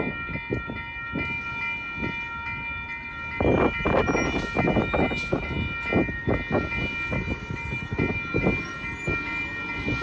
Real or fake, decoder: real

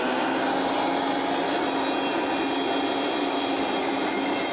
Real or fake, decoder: real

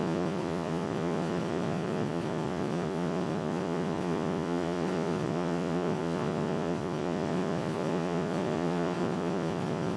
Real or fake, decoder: fake, vocoder, Vocos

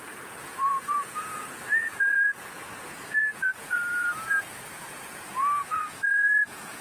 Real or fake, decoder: fake, vocoder, Vocos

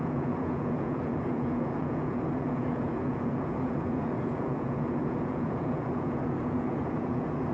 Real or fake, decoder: fake, vocoder, Vocos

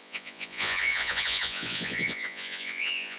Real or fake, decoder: fake, vocoder, Vocos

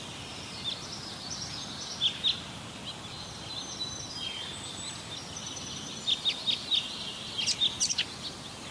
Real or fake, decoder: real